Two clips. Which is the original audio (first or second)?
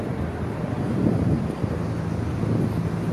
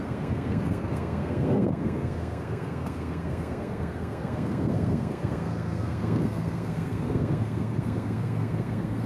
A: first